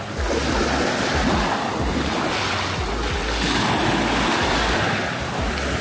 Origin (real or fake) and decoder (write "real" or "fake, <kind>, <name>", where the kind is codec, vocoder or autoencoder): real